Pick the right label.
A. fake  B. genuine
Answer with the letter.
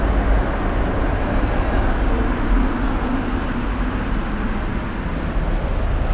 B